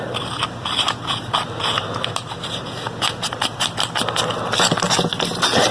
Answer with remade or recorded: recorded